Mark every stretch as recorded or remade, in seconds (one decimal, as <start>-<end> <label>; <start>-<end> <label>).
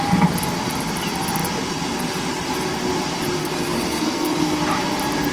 0.0-3.4 recorded; 3.4-4.6 remade; 4.6-5.3 recorded